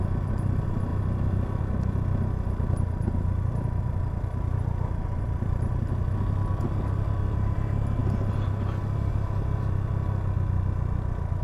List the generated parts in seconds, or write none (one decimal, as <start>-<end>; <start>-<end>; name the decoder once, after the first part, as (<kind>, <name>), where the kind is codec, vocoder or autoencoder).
none

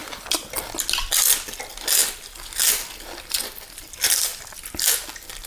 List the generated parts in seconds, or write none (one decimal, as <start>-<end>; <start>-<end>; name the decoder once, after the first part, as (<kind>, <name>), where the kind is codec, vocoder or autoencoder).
none

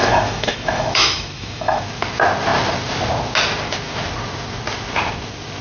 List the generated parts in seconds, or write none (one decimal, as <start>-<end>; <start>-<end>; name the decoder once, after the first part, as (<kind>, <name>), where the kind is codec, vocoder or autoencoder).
0.0-1.8 (autoencoder, DAC-VAE)

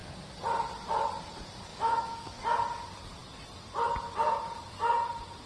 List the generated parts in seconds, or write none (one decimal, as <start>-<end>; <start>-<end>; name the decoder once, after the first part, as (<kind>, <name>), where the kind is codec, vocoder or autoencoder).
1.7-2.4 (autoencoder, DAC-VAE)

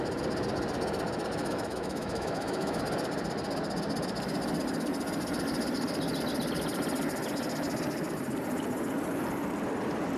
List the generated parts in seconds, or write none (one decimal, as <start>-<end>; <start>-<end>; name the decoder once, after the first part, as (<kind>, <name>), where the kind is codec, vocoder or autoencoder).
1.4-2.8 (autoencoder, DAC-VAE)

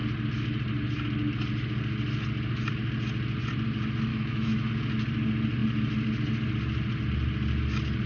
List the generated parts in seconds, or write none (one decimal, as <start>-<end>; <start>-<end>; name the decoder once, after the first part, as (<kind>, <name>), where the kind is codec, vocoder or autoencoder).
4.1-4.7 (autoencoder, DAC-VAE)

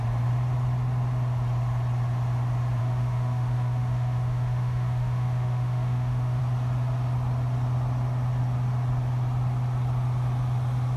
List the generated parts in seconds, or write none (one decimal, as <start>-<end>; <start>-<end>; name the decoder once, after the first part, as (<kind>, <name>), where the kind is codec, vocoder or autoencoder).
2.8-6.4 (autoencoder, DAC-VAE)

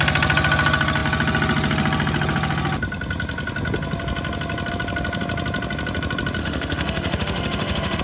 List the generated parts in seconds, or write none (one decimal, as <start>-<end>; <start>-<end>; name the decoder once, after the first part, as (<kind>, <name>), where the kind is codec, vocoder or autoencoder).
6.4-8.0 (autoencoder, DAC-VAE)